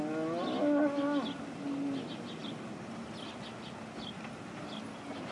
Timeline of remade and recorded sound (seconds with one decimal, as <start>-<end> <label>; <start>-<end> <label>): 0.0-5.3 recorded

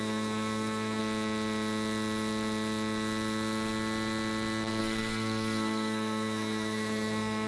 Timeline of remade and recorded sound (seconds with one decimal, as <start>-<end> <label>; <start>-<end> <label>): 0.0-1.0 remade; 1.0-4.8 recorded; 4.8-7.5 remade

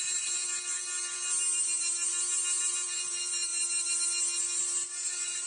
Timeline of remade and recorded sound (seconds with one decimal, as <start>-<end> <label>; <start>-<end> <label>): 0.0-5.5 recorded

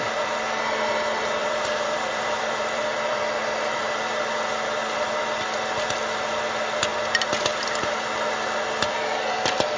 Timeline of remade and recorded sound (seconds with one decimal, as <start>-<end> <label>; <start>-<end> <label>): 0.0-1.4 recorded; 1.4-3.2 remade; 3.2-9.8 recorded

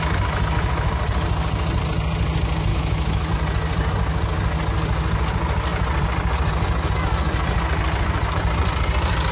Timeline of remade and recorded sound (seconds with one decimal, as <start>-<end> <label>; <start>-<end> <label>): 0.0-2.7 recorded; 2.7-3.3 remade; 3.3-9.3 recorded

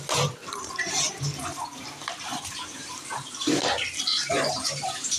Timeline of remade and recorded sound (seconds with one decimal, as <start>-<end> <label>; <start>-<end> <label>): 0.0-0.4 recorded; 0.4-3.5 remade; 3.5-4.1 recorded; 4.1-5.2 remade

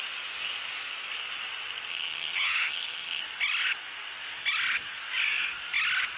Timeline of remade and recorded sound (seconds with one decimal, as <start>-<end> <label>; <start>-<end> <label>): 0.0-1.9 recorded; 1.9-3.2 remade; 3.2-6.2 recorded

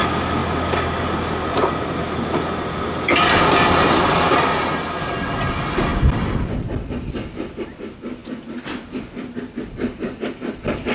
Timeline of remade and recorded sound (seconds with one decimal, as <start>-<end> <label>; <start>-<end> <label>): 0.0-10.9 recorded